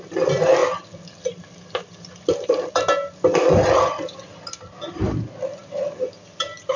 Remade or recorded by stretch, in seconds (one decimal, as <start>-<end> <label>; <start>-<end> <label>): 0.0-6.8 recorded